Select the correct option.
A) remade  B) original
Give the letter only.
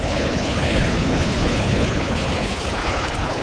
A